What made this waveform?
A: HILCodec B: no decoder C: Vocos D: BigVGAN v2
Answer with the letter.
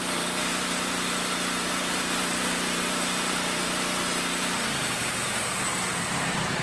D